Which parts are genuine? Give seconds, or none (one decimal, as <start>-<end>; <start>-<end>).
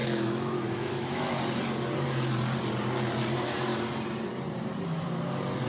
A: 1.4-5.7